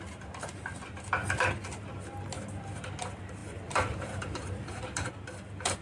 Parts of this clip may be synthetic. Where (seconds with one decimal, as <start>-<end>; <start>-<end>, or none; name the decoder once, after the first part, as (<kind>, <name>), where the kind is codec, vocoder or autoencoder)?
3.4-4.8 (vocoder, BigVGAN v2)